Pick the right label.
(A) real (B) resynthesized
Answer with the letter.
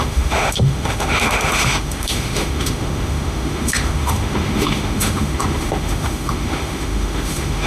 B